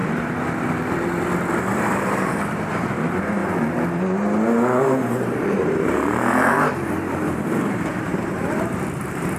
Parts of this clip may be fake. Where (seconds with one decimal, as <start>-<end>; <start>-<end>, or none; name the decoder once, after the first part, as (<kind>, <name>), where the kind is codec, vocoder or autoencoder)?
1.6-3.4 (vocoder, BigVGAN v2); 4.8-9.4